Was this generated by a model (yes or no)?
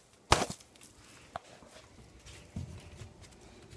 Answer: no